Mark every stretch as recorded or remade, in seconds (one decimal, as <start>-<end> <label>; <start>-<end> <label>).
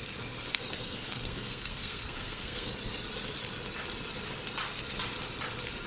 0.0-0.5 recorded; 0.5-2.7 remade; 2.7-5.9 recorded